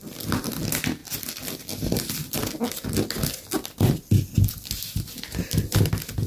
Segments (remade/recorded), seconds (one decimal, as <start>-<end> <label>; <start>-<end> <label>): 0.0-6.3 recorded